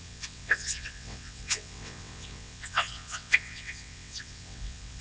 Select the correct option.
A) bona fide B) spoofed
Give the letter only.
B